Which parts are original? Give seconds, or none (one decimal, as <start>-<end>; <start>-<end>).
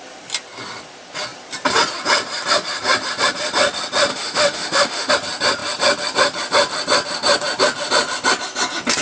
0.0-4.1; 5.1-9.0